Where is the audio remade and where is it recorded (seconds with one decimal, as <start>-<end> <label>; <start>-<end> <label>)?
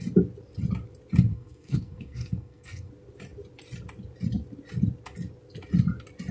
0.0-1.3 recorded; 1.3-2.9 remade; 2.9-6.3 recorded